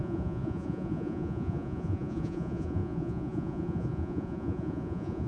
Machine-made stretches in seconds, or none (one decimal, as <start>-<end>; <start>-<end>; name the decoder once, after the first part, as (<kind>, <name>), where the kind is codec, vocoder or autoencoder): 0.0-5.3 (vocoder, Vocos)

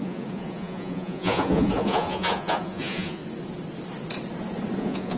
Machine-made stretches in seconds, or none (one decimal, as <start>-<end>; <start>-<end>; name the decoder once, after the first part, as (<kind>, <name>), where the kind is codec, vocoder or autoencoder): 0.0-3.2 (vocoder, Vocos); 4.8-5.2

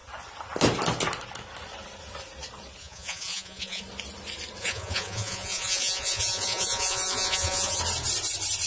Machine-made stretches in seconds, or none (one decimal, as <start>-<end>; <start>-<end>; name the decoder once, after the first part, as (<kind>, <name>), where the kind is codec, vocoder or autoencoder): 2.8-3.8 (vocoder, Vocos); 4.6-7.8

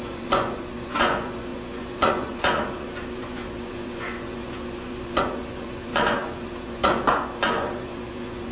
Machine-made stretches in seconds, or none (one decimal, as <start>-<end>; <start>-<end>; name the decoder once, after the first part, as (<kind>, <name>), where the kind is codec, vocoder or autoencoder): 0.0-8.5 (vocoder, Vocos)